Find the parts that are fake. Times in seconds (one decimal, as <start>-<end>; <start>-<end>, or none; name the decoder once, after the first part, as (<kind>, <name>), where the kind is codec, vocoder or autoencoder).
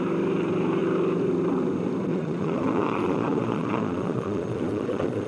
2.1-5.3 (vocoder, Vocos)